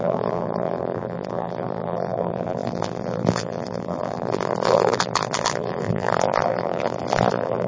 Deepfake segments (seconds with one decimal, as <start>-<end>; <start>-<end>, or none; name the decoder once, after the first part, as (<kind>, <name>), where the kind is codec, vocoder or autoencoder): 0.0-7.7 (vocoder, BigVGAN v2)